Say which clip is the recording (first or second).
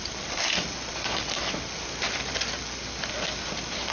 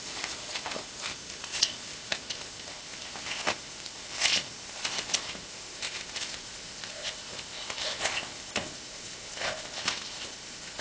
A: first